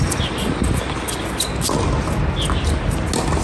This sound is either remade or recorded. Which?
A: recorded